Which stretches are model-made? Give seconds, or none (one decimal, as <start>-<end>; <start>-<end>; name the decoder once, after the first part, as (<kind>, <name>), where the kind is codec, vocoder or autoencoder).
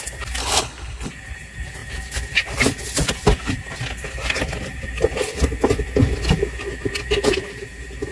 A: 0.4-1.1 (codec, HILCodec)